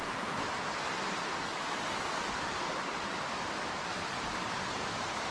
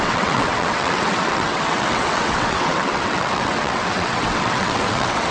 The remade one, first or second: second